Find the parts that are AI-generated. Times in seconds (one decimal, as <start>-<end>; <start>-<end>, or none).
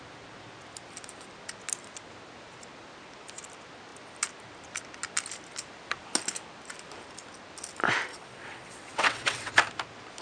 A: 8.1-9.5